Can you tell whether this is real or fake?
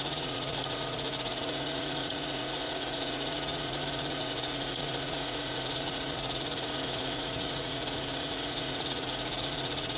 fake